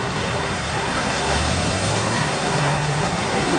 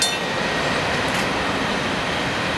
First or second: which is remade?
first